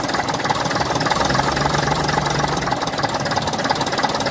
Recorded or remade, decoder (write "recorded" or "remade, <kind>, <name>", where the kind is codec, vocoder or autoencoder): recorded